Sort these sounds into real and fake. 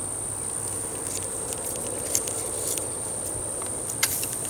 real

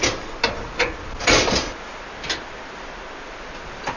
real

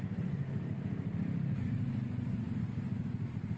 real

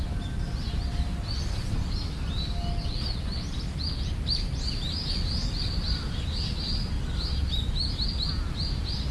real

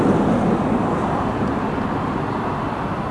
real